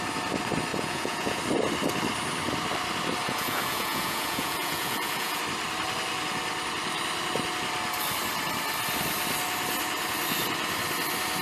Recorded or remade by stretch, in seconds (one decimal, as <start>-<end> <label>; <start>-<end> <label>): 0.0-0.7 recorded; 0.7-1.4 remade; 1.4-3.2 recorded; 3.2-5.4 remade; 5.4-11.4 recorded